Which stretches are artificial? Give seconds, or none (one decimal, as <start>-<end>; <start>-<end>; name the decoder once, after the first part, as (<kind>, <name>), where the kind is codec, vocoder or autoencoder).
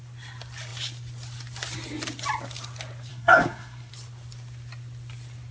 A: 3.1-3.9 (codec, SNAC)